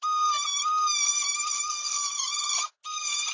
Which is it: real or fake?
real